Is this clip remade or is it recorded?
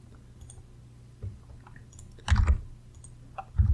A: recorded